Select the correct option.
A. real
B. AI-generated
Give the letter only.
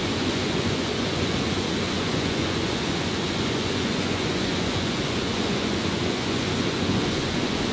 B